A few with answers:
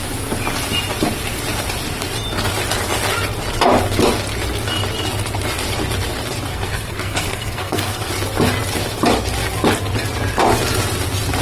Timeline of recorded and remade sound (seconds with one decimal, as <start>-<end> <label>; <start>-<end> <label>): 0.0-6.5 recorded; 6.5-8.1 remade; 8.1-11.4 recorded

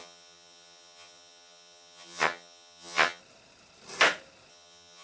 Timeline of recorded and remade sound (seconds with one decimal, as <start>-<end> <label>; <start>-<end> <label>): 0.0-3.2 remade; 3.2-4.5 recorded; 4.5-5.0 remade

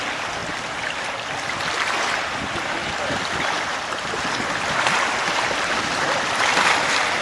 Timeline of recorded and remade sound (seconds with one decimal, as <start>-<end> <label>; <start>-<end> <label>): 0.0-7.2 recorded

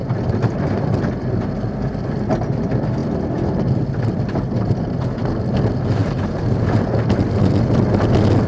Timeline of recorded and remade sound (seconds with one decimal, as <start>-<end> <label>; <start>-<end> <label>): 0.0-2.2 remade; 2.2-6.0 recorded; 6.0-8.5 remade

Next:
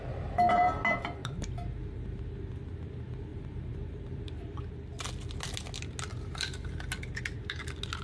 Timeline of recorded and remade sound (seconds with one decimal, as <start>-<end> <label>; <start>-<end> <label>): 0.0-1.2 recorded; 1.2-2.2 remade; 2.2-3.3 recorded; 3.3-4.2 remade; 4.2-6.1 recorded; 6.1-6.8 remade; 6.8-8.0 recorded